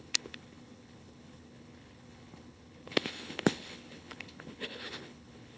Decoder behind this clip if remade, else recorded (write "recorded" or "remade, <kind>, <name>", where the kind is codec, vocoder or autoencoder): remade, codec, HILCodec